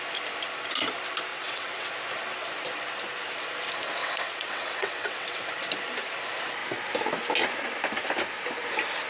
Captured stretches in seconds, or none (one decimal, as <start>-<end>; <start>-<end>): 0.0-1.3; 1.9-4.0; 5.4-9.1